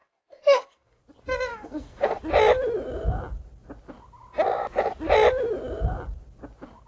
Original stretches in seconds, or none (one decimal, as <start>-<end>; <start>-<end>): 1.0-1.5; 2.2-6.9